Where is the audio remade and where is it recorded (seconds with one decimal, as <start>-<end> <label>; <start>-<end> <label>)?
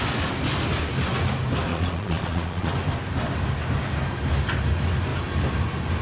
0.0-1.7 recorded; 1.7-2.7 remade; 2.7-6.0 recorded